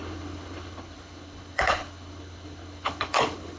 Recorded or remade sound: remade